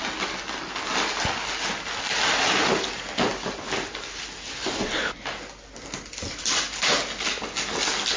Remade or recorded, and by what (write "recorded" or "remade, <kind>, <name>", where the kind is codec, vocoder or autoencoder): recorded